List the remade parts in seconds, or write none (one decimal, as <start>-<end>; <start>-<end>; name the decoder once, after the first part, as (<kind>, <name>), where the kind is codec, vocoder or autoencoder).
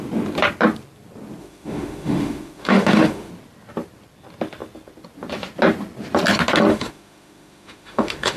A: 1.4-3.3 (autoencoder, DAC-VAE); 6.7-8.4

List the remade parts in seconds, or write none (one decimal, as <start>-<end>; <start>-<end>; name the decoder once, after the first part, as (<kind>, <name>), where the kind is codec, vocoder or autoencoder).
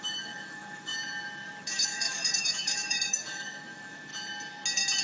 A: 0.0-0.9 (autoencoder, DAC-VAE); 1.6-4.1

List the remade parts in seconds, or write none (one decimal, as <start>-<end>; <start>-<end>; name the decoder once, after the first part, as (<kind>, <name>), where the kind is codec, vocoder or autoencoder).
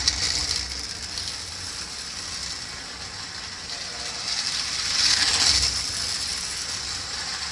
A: none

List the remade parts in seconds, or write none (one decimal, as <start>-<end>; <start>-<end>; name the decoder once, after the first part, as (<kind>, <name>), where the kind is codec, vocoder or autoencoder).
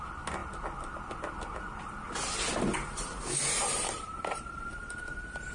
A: 2.7-3.2 (vocoder, BigVGAN v2); 3.6-5.5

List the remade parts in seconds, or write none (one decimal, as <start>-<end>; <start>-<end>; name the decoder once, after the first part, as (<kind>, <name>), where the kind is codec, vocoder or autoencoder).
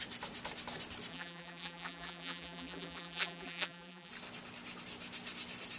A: 1.1-4.1 (vocoder, BigVGAN v2)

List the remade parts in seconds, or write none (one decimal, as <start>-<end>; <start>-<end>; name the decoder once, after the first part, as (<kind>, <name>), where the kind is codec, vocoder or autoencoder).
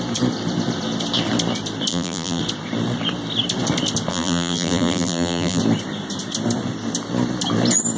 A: 1.9-2.4 (vocoder, BigVGAN v2); 4.1-5.6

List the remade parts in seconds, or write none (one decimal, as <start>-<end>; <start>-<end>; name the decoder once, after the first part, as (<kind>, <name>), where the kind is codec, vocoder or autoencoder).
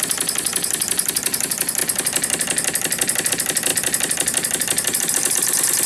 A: none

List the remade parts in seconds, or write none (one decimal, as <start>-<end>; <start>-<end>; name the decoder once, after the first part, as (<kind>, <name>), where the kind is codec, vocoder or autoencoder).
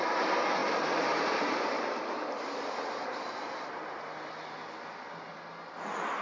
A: 0.6-4.0 (vocoder, BigVGAN v2)